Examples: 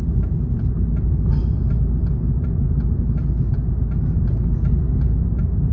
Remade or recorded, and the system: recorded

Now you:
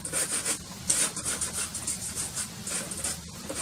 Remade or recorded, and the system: recorded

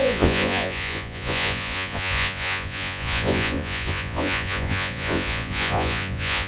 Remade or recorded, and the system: remade, vocoder, Vocos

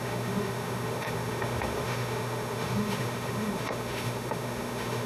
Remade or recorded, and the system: remade, autoencoder, DAC-VAE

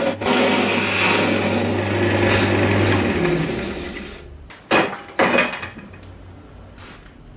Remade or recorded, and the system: recorded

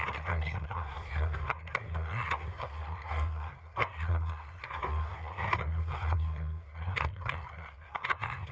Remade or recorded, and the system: remade, codec, SNAC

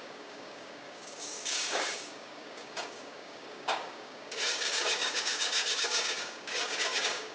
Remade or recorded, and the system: remade, codec, DAC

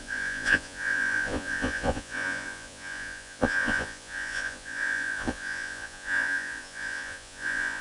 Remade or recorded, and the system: remade, vocoder, Vocos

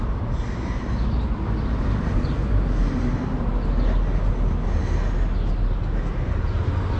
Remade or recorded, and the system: recorded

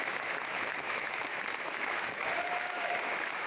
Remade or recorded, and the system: remade, autoencoder, DAC-VAE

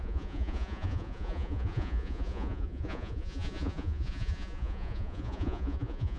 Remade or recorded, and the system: remade, vocoder, Vocos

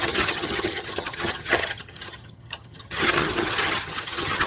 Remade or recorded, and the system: remade, vocoder, HiFi-GAN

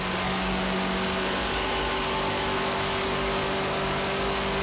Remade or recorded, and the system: remade, codec, DAC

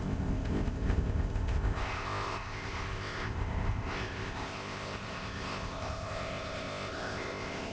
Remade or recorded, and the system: remade, codec, ZipCodec